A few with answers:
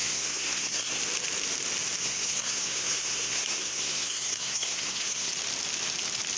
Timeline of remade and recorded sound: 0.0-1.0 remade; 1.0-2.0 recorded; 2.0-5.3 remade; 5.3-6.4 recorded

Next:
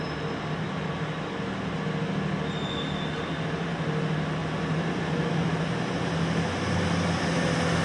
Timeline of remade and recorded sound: 0.0-7.8 recorded